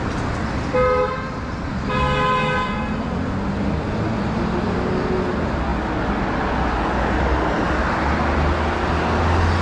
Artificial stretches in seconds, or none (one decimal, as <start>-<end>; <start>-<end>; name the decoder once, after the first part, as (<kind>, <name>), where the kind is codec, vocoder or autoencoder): none